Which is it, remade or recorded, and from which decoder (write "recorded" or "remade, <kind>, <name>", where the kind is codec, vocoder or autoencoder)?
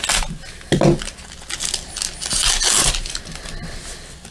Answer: recorded